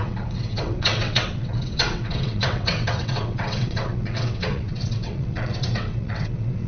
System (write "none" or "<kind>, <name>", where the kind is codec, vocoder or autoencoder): vocoder, WaveNeXt